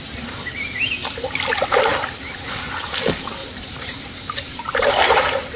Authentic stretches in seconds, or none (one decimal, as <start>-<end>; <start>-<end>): 0.0-3.4; 4.9-5.6

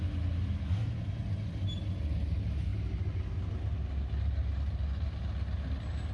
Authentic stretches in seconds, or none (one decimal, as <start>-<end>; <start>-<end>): 0.0-6.1

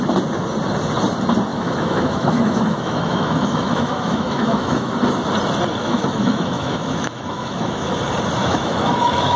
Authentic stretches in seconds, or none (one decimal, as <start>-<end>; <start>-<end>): 0.0-1.5; 4.9-5.8; 8.0-8.4

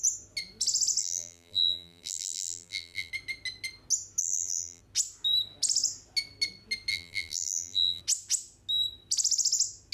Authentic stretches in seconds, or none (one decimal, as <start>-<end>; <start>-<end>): 0.0-1.0; 3.1-4.2; 4.8-6.9; 8.0-9.9

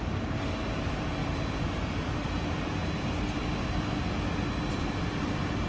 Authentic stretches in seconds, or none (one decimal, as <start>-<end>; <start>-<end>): 0.0-5.7